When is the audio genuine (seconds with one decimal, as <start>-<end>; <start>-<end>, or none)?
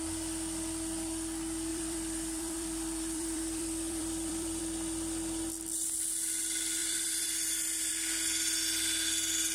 0.0-1.7; 4.6-6.8; 7.9-9.5